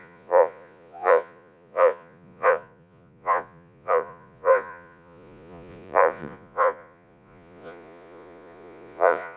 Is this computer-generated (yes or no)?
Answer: yes